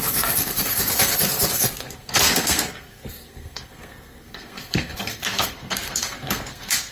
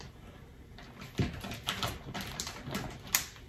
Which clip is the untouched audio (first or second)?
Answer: second